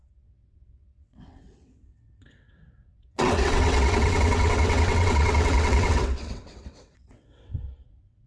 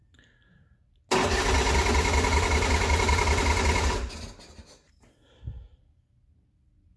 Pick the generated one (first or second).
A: first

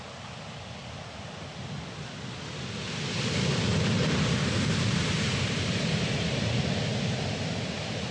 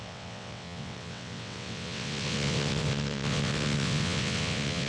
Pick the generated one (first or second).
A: second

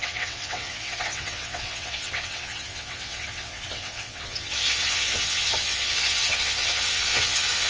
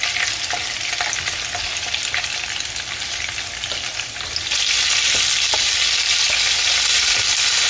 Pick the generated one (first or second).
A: first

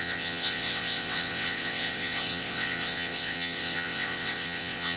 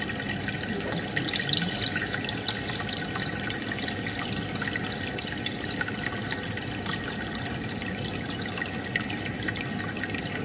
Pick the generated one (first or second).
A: first